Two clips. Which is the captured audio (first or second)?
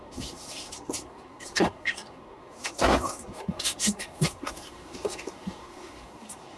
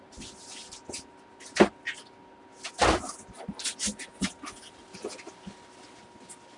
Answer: second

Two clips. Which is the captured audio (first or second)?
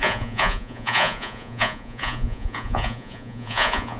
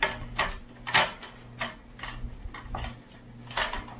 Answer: second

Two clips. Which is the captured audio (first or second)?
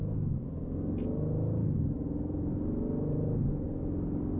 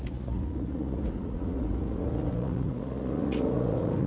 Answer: first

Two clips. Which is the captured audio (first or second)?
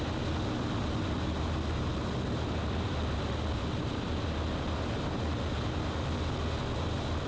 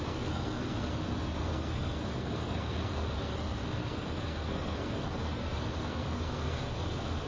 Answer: first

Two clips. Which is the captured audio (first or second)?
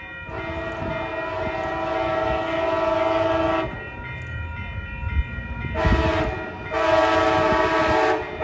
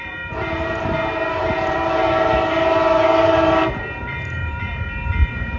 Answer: first